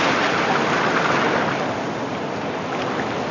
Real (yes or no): yes